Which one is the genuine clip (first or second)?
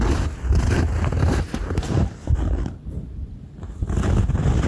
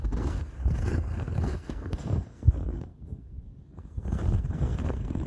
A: first